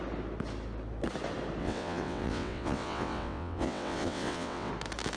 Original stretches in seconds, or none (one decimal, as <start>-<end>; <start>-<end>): 0.0-1.6; 4.7-5.2